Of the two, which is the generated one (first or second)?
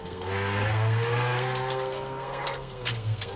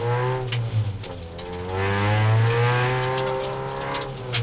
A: first